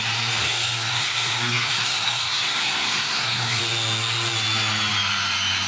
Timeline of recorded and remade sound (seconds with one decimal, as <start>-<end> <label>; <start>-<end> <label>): 0.0-0.4 recorded; 0.4-3.6 remade; 3.6-5.7 recorded